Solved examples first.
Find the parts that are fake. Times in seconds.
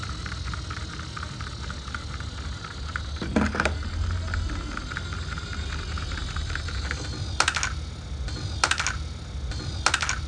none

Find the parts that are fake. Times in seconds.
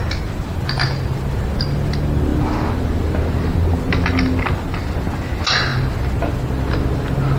none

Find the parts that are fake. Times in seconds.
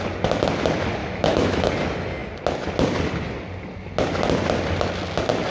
1.0-1.7 (autoencoder, DAC-VAE)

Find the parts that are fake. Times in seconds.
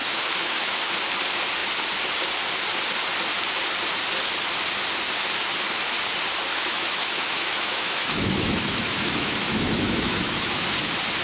0.0-0.8 (autoencoder, DAC-VAE); 6.5-10.6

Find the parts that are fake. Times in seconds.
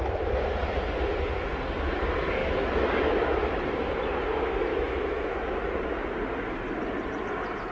2.4-3.8 (autoencoder, DAC-VAE); 4.7-5.4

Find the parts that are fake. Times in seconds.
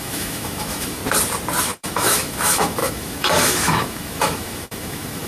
0.0-1.0 (autoencoder, DAC-VAE); 1.6-5.3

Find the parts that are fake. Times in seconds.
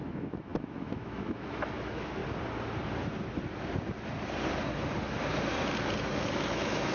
0.0-2.2 (autoencoder, DAC-VAE); 6.3-6.9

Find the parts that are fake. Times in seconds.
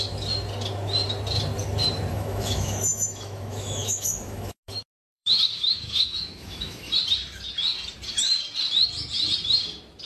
2.1-7.0 (autoencoder, DAC-VAE)